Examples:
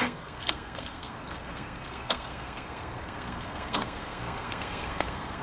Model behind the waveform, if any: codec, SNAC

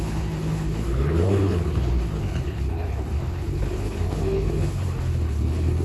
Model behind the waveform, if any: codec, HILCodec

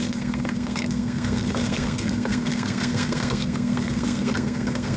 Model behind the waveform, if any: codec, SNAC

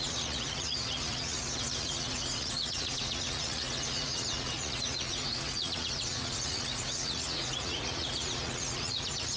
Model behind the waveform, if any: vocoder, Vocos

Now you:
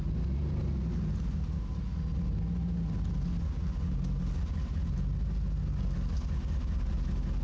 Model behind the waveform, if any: none